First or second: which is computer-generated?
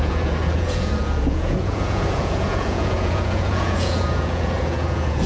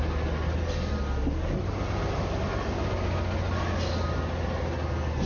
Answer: first